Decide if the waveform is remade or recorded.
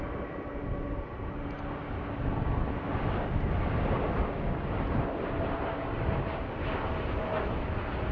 recorded